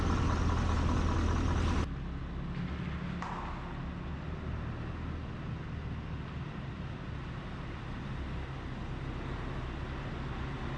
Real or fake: real